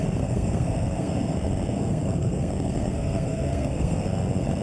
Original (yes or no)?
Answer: no